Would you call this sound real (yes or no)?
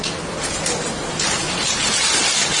yes